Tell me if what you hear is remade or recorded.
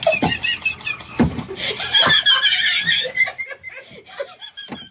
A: recorded